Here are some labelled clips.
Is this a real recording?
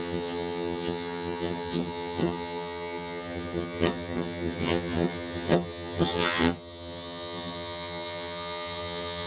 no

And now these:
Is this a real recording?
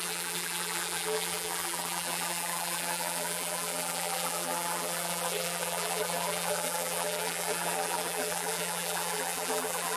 no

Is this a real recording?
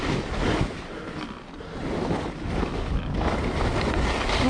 yes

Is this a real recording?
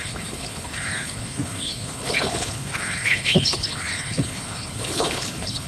no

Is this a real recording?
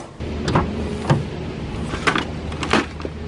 yes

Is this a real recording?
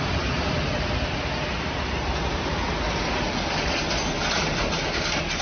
yes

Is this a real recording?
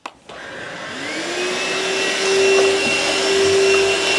yes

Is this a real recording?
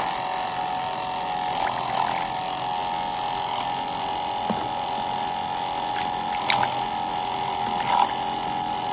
yes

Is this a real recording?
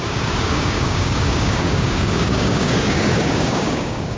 no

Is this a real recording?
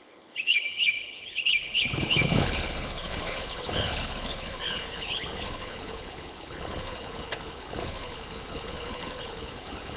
no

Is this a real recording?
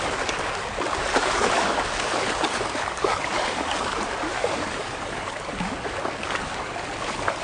no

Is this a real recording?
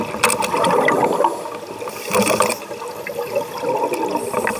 yes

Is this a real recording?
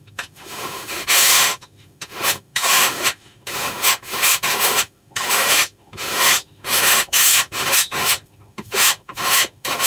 no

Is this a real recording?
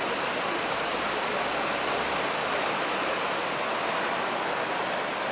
yes